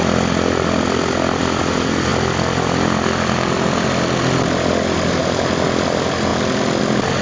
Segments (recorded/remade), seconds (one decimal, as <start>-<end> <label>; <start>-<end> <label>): 0.0-7.2 recorded